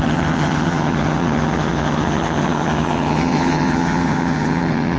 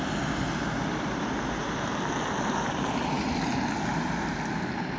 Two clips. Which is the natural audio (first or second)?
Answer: second